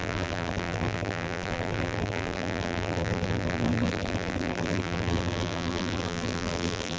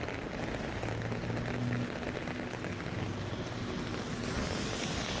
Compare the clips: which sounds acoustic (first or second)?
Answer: second